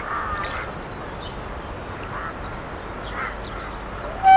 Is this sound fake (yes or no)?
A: no